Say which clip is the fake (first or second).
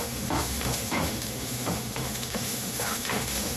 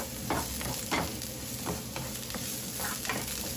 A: first